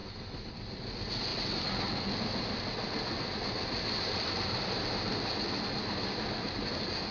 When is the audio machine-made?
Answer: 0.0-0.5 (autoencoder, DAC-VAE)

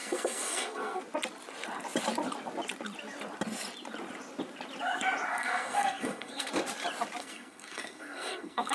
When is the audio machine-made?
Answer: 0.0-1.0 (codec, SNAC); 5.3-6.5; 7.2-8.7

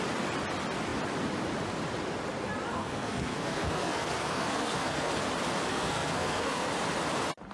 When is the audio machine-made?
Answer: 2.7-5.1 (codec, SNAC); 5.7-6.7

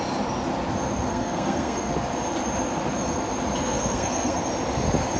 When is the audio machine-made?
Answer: 1.1-1.9 (codec, SNAC); 3.6-4.5